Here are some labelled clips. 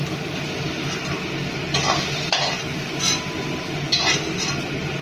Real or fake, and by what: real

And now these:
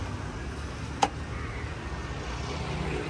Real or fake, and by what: real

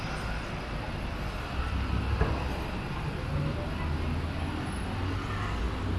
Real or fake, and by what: real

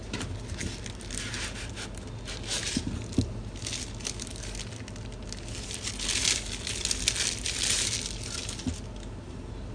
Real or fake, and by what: real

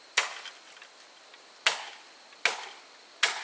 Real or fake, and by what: real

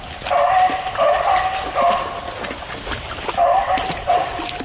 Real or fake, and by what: real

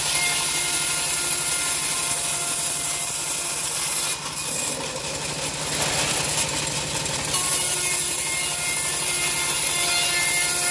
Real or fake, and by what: real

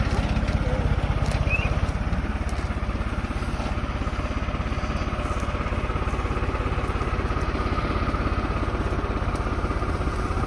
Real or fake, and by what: real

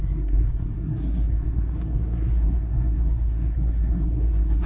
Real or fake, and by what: fake, codec, SNAC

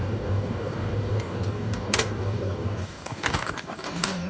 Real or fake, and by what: fake, codec, DAC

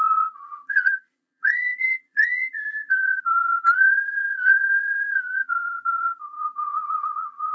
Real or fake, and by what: fake, vocoder, Vocos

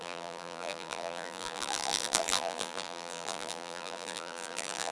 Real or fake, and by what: fake, vocoder, BigVGAN v2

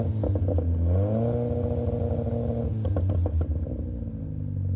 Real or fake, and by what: real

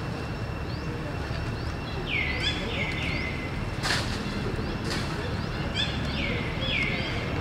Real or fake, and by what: real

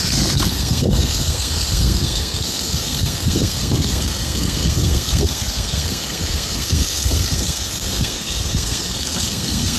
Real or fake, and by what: fake, codec, SNAC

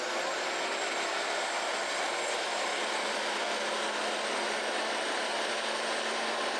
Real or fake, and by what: real